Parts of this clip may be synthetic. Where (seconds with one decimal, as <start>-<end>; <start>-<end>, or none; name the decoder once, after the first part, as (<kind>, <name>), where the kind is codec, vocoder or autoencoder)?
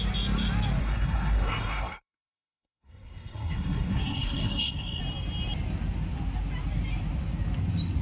0.8-5.0 (codec, SNAC)